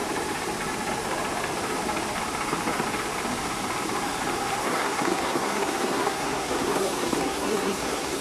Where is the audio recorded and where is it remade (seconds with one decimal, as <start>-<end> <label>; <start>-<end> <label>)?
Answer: 0.0-4.6 recorded; 4.6-8.2 remade